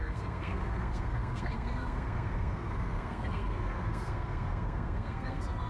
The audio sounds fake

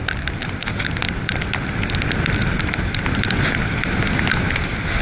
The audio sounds real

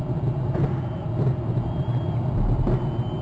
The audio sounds real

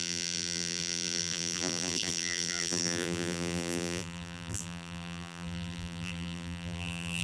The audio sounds fake